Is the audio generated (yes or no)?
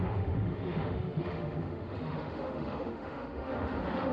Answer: yes